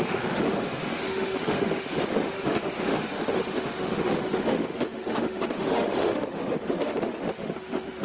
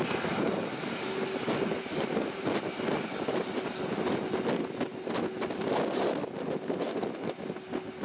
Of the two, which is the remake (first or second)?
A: first